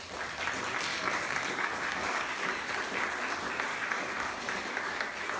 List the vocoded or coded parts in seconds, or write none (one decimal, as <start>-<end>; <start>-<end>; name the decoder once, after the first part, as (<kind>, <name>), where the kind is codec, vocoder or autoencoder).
0.9-2.7 (codec, DAC); 3.7-5.0